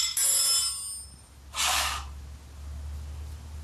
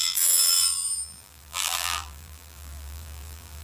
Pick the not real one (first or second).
second